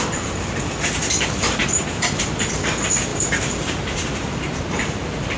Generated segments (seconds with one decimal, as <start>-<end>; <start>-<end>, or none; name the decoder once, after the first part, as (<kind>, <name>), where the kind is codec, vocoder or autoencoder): 1.6-2.7 (vocoder, BigVGAN v2); 3.1-4.8